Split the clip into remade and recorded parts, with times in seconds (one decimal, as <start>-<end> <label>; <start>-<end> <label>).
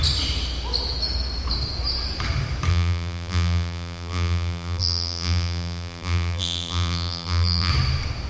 0.0-2.7 recorded; 2.7-7.7 remade; 7.7-8.3 recorded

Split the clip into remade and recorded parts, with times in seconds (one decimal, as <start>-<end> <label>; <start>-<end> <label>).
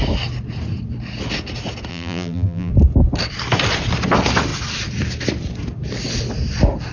0.0-1.9 recorded; 1.9-2.7 remade; 2.7-6.9 recorded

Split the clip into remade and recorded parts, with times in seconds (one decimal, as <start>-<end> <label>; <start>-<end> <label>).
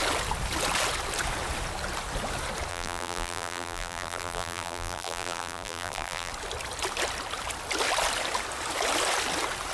0.0-2.7 recorded; 2.7-6.3 remade; 6.3-9.7 recorded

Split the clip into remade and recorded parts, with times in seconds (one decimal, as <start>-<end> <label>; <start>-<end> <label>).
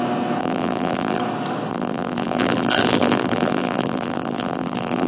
0.0-0.4 recorded; 0.4-1.2 remade; 1.2-1.7 recorded; 1.7-5.1 remade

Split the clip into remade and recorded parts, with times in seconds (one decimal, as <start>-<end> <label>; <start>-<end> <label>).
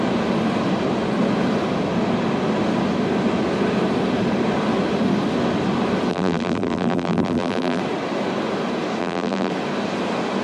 0.0-6.1 recorded; 6.1-7.8 remade; 7.8-9.0 recorded; 9.0-9.5 remade; 9.5-10.4 recorded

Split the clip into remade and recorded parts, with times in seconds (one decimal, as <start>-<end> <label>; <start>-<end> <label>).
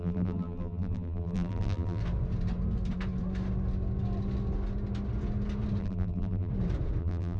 0.0-2.0 remade; 2.0-5.8 recorded; 5.8-6.5 remade; 6.5-7.0 recorded; 7.0-7.4 remade